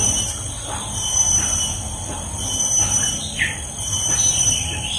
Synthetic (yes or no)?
yes